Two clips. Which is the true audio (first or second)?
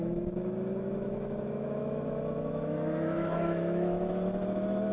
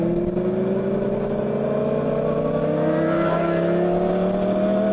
second